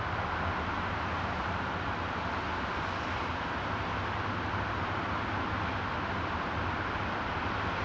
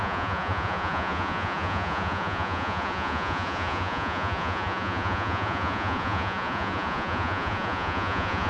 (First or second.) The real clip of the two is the first